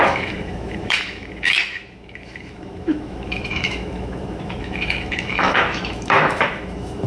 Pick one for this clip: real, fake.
fake